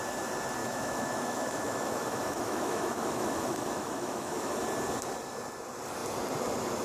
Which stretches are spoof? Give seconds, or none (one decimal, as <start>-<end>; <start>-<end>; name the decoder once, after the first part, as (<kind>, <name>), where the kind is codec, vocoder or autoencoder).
0.6-4.5 (autoencoder, DAC-VAE)